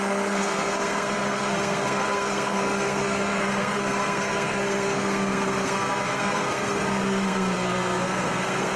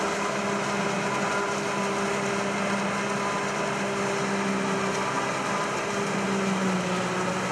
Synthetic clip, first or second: first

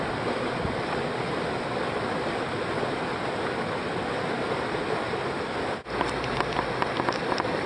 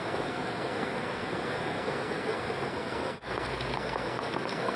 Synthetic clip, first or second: second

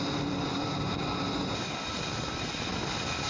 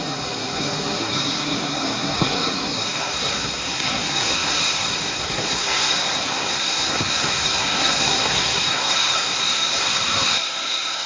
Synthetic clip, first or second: second